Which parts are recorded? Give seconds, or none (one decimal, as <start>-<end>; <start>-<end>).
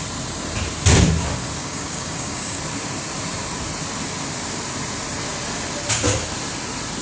0.0-1.6; 2.6-7.0